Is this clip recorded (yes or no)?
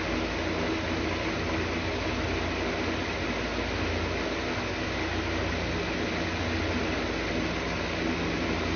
yes